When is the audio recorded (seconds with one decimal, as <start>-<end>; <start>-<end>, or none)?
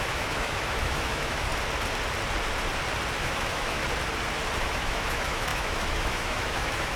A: 1.5-3.2; 3.8-4.6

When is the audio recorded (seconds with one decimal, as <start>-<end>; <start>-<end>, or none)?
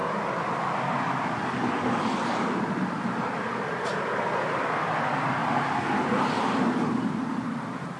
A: 0.0-8.0